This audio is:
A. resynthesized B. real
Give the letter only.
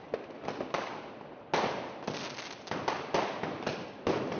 B